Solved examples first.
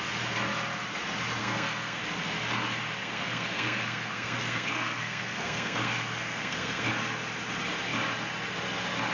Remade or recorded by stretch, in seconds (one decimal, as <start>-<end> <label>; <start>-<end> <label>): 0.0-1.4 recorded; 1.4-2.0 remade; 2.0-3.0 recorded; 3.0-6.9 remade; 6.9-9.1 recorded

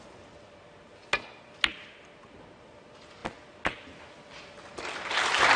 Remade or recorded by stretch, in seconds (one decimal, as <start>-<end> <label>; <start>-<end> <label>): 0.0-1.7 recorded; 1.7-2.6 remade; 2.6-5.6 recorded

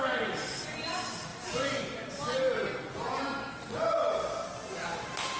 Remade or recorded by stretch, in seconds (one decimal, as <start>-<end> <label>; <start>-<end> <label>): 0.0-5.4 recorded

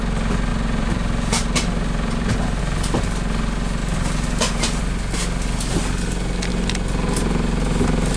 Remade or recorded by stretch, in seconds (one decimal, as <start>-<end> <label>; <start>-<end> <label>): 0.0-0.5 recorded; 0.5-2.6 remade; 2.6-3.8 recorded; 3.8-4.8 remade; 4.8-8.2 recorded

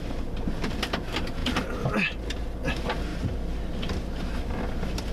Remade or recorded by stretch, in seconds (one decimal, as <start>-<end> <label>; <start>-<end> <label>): 0.0-5.1 recorded

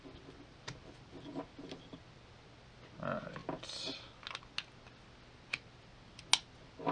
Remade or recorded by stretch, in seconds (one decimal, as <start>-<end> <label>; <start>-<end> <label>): 0.0-6.9 recorded

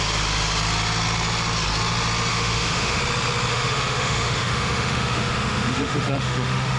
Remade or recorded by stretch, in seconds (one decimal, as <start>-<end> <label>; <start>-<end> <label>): 0.0-2.3 recorded; 2.3-3.0 remade; 3.0-3.5 recorded; 3.5-6.8 remade